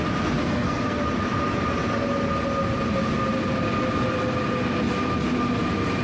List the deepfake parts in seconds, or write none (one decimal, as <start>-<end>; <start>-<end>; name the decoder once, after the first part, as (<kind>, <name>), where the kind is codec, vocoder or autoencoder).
0.4-1.0 (codec, SNAC)